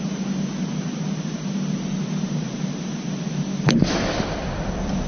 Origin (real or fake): real